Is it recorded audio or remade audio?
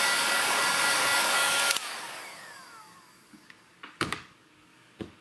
remade